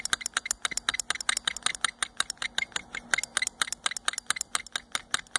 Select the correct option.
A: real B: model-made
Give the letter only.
A